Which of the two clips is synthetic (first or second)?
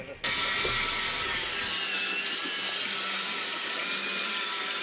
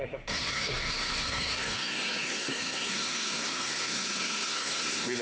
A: second